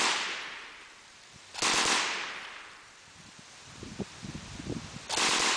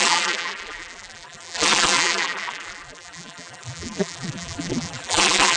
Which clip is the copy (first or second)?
second